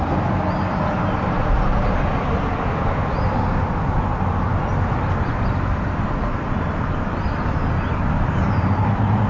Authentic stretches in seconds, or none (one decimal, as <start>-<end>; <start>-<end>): 0.0-9.3